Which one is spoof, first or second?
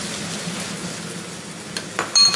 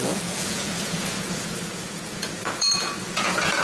second